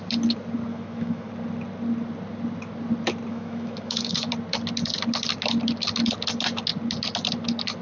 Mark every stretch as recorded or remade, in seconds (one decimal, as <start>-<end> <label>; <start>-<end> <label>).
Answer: 0.0-0.7 recorded; 0.7-1.3 remade; 1.3-3.3 recorded; 3.3-4.3 remade; 4.3-7.8 recorded